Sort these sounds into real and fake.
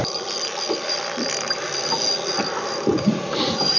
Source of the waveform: real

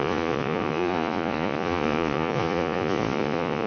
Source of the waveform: fake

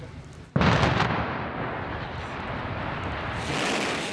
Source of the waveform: real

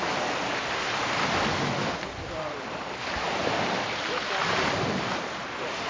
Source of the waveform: real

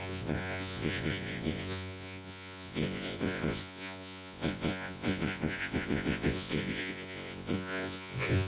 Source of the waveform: fake